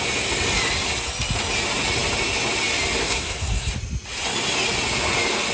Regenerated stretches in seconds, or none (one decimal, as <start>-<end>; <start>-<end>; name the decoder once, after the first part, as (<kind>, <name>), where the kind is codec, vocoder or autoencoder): 3.0-3.7 (codec, SNAC)